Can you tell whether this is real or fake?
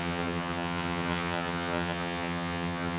fake